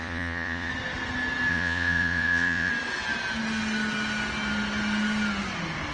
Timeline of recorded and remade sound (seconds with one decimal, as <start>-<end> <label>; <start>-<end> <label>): 0.0-0.7 remade; 0.7-1.5 recorded; 1.5-2.7 remade; 2.7-5.9 recorded